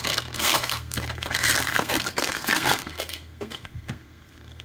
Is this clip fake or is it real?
fake